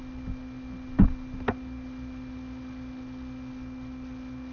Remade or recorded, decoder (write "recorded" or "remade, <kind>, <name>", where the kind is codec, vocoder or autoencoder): recorded